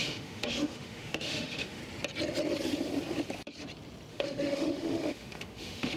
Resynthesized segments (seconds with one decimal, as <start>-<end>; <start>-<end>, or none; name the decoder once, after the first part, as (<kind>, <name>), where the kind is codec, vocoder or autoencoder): 0.0-1.8 (autoencoder, DAC-VAE); 4.1-6.0